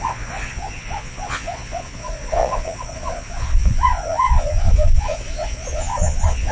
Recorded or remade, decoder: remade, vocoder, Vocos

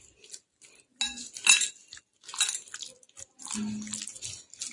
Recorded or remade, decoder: recorded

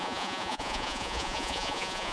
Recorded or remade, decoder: remade, vocoder, Vocos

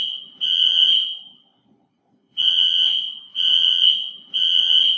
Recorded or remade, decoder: remade, vocoder, Vocos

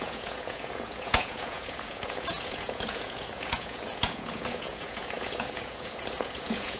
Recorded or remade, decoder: remade, vocoder, Vocos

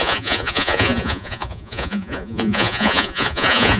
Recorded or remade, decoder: remade, vocoder, Vocos